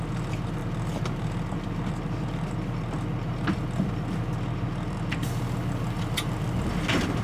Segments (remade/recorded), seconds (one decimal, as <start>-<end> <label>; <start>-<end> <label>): 0.0-7.2 recorded